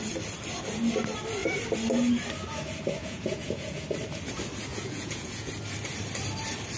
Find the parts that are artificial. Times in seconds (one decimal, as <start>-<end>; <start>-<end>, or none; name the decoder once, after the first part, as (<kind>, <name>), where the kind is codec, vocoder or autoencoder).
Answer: 3.0-3.8 (vocoder, Vocos); 4.7-5.5